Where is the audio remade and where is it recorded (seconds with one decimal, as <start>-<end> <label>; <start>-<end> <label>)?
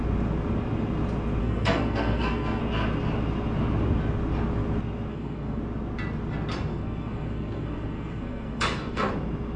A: 0.0-1.4 recorded; 1.4-2.6 remade; 2.6-5.1 recorded; 5.1-5.6 remade; 5.6-6.7 recorded; 6.7-9.1 remade; 9.1-9.6 recorded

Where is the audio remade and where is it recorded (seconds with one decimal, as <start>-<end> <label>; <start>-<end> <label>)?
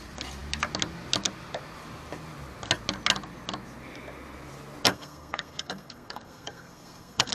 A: 0.0-4.9 recorded; 4.9-7.3 remade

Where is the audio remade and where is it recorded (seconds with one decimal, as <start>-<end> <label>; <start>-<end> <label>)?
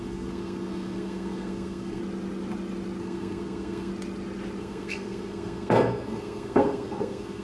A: 0.0-2.0 remade; 2.0-3.0 recorded; 3.0-3.9 remade; 3.9-4.6 recorded; 4.6-7.4 remade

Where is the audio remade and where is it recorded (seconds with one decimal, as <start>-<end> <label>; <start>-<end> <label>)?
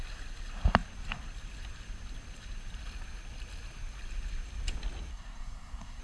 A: 0.0-5.1 recorded; 5.1-6.0 remade